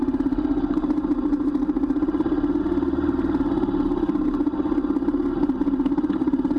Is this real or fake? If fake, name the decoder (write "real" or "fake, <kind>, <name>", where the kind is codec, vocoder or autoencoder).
real